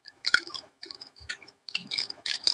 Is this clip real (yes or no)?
no